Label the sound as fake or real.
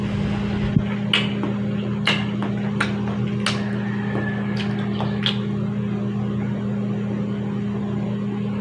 real